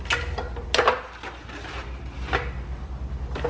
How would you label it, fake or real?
real